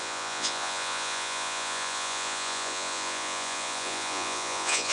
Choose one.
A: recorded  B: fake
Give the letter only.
B